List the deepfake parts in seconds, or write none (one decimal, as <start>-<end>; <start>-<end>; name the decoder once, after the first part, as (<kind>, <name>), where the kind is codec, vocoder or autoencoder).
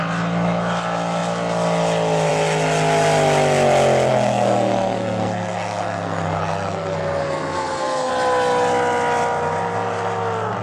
4.1-8.1 (codec, SNAC)